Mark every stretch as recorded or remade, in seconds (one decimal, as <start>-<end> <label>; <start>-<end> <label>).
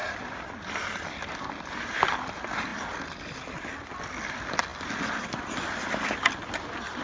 0.0-7.0 recorded